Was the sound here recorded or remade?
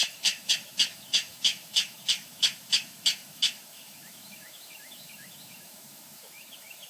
remade